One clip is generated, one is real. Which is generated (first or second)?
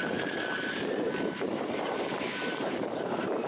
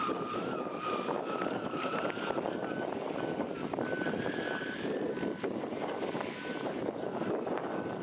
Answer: first